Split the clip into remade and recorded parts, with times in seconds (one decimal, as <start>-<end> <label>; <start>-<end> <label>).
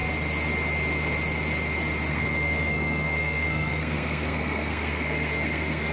0.0-2.1 recorded; 2.1-5.9 remade